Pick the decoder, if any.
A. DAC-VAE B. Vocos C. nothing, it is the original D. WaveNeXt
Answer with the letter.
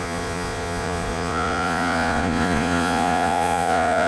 B